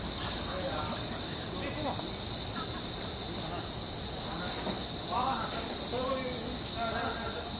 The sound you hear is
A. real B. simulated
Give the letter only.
A